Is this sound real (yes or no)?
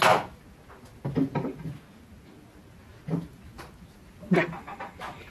yes